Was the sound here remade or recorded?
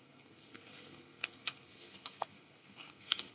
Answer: remade